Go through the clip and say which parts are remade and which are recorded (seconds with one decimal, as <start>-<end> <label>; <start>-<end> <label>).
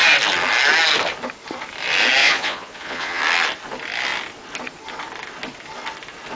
0.0-2.2 recorded; 2.2-3.2 remade; 3.2-6.3 recorded